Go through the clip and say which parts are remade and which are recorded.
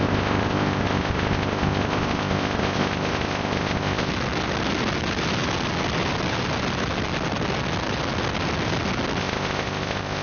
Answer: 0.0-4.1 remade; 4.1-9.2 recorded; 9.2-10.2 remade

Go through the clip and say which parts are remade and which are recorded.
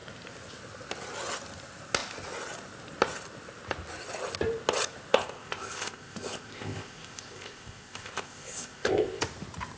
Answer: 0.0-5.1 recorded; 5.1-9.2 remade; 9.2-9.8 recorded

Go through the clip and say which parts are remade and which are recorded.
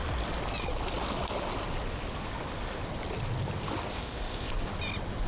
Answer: 0.0-3.9 recorded; 3.9-4.5 remade; 4.5-5.3 recorded